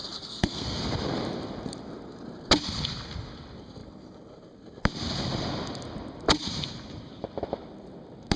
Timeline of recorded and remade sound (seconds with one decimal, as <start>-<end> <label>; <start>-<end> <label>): 0.0-0.8 remade; 0.8-8.4 recorded